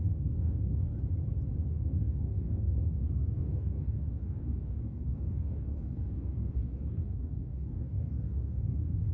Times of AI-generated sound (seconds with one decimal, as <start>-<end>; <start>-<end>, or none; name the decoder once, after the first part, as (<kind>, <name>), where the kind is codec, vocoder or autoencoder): 0.0-0.9 (codec, DAC); 1.7-9.1